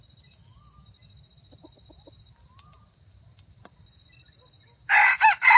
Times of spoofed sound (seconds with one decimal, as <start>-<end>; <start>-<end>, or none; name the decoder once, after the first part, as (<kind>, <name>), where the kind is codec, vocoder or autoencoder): none

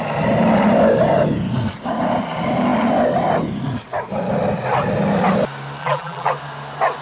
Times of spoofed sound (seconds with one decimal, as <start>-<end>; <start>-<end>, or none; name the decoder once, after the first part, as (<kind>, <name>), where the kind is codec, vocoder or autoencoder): 5.8-6.3 (vocoder, BigVGAN v2)

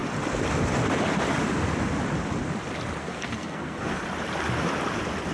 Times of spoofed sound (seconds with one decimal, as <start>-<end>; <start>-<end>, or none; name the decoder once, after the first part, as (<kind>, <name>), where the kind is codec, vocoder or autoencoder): 3.0-4.0 (codec, SNAC)

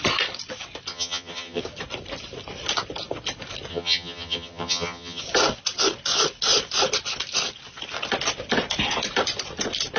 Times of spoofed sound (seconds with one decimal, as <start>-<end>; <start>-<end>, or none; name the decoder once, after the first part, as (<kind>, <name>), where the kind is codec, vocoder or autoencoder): 0.9-1.6 (vocoder, HiFi-GAN); 3.7-5.2

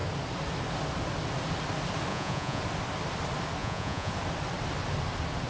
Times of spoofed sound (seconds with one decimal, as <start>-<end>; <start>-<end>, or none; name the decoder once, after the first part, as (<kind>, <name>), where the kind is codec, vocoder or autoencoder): 2.1-2.6 (vocoder, Vocos); 3.6-4.1